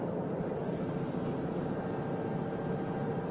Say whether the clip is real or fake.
real